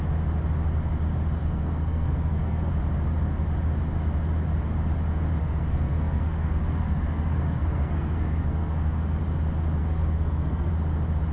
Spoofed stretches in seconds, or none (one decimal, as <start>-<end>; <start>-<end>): 1.4-2.7; 5.4-9.2; 9.8-10.7